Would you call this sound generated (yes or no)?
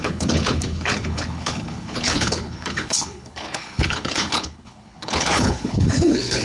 yes